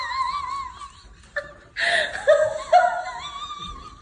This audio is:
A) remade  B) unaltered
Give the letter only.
B